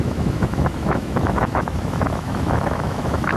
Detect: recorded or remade remade